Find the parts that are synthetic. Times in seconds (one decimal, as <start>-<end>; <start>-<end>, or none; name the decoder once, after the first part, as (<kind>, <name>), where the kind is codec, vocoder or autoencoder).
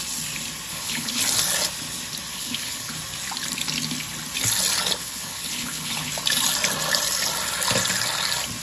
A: 0.7-1.2 (codec, HILCodec); 2.3-2.9; 5.0-6.1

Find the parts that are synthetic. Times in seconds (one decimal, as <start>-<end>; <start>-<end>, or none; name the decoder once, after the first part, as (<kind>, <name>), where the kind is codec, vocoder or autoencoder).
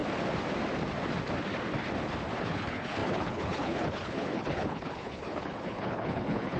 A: 2.4-6.6 (codec, HILCodec)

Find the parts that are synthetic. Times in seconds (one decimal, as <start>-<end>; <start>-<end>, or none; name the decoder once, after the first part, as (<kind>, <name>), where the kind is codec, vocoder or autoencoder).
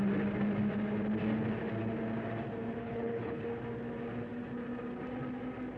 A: 2.8-3.4 (codec, HILCodec)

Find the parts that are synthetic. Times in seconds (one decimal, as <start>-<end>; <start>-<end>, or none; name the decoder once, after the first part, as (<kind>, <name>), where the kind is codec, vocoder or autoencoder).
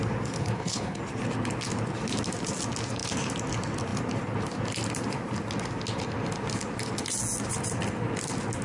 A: 0.4-1.0 (codec, HILCodec)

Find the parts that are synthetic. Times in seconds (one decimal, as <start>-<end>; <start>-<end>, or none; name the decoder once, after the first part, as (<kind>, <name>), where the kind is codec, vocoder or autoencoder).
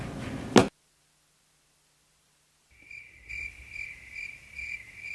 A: none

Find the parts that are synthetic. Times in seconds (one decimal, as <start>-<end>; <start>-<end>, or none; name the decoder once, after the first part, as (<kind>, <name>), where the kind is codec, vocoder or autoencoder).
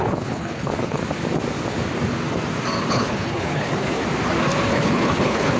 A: 0.0-1.0 (codec, HILCodec); 2.9-4.0; 4.7-5.6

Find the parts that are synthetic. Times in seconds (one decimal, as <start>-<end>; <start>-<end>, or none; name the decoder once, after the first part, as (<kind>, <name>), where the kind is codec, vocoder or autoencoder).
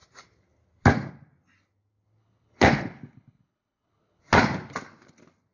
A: 2.2-4.2 (codec, HILCodec)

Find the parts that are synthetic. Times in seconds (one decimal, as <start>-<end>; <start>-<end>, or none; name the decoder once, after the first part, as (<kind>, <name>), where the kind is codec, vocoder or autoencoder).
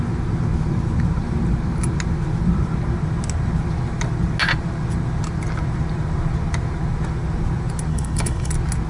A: 7.9-8.5 (codec, HILCodec)